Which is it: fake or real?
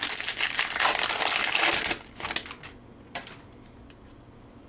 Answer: real